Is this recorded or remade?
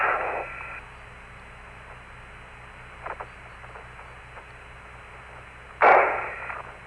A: recorded